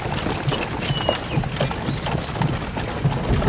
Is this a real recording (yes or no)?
yes